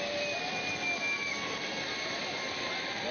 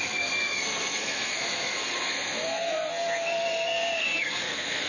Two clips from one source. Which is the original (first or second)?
first